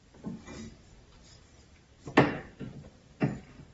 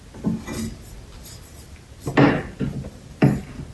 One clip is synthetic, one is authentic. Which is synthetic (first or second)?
first